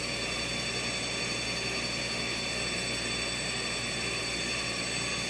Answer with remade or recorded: recorded